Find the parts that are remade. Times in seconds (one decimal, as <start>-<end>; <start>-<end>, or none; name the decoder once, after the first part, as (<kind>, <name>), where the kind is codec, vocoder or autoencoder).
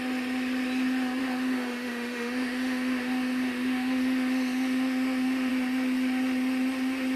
1.2-5.5 (autoencoder, DAC-VAE)